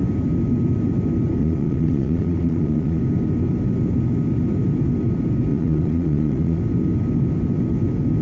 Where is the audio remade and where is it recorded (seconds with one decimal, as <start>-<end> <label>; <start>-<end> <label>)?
0.0-1.4 recorded; 1.4-3.0 remade; 3.0-5.5 recorded; 5.5-6.6 remade; 6.6-8.2 recorded